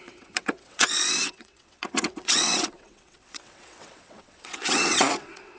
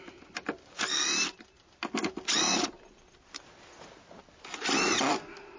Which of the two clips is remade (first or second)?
first